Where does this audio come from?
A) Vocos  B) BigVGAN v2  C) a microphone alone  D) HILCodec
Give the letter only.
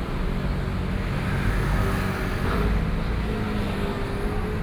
C